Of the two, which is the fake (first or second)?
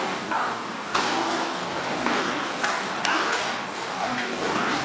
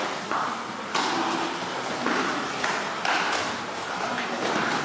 first